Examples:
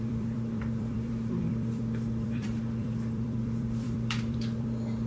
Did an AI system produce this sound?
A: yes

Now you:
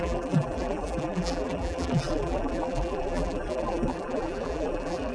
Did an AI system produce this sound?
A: yes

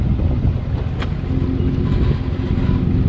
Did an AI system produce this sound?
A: no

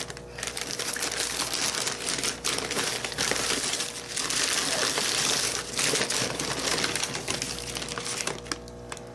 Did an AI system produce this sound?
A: no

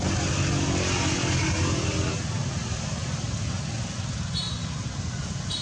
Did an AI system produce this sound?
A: no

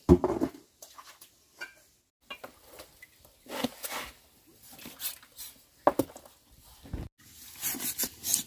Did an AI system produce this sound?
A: no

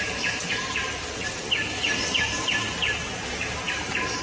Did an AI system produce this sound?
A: yes